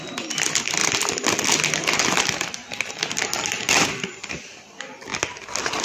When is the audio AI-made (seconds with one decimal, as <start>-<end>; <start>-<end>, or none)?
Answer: none